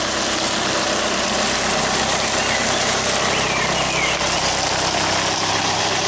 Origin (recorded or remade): recorded